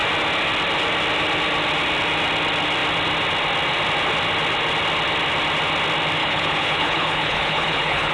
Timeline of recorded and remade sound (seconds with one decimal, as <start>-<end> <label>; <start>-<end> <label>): 0.0-6.2 recorded; 6.2-8.1 remade